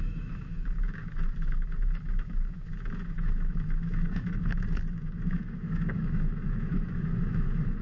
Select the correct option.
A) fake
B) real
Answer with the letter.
A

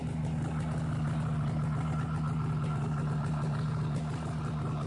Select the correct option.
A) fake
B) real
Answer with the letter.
B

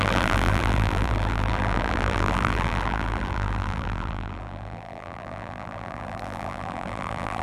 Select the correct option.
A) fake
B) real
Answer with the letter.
A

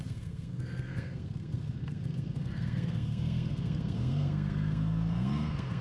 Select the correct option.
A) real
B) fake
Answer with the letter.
B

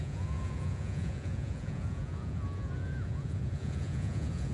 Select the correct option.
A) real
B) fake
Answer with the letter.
B